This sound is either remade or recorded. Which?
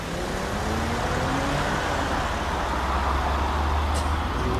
recorded